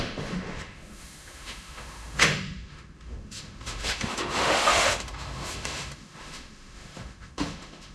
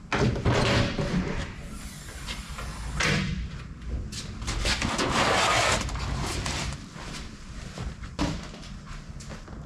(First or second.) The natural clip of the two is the second